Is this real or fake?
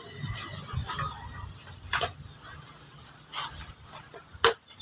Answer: real